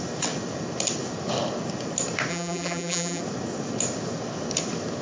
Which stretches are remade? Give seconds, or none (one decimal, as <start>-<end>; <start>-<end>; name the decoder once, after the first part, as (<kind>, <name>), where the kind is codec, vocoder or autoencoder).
2.3-3.2 (vocoder, BigVGAN v2)